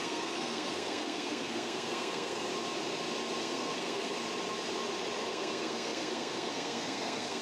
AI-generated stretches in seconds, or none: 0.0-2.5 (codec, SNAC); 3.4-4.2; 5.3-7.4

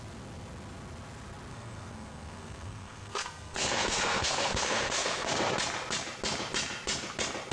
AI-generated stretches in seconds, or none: 1.5-5.3 (codec, SNAC)

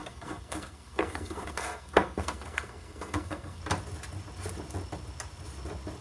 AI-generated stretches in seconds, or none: 0.0-3.6 (codec, SNAC)